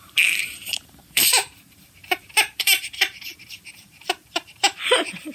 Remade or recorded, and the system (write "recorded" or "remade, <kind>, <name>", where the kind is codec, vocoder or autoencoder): remade, vocoder, BigVGAN v2